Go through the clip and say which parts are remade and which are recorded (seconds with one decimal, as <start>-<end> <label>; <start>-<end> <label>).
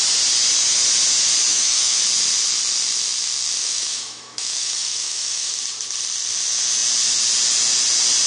0.0-1.5 recorded; 1.5-2.0 remade; 2.0-3.6 recorded; 3.6-5.5 remade; 5.5-8.3 recorded